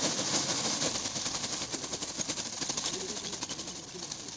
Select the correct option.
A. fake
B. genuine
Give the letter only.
B